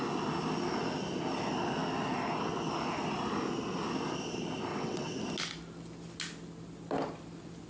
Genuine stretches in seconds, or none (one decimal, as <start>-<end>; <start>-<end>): 0.0-4.7; 5.2-7.7